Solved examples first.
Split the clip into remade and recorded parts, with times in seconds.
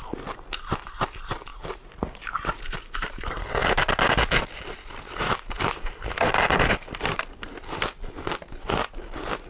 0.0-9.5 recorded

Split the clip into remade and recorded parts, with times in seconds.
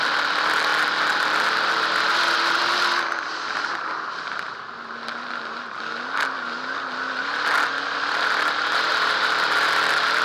0.0-10.2 recorded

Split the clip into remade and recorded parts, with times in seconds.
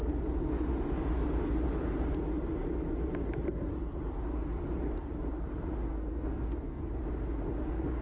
0.0-5.9 recorded; 5.9-6.9 remade; 6.9-8.0 recorded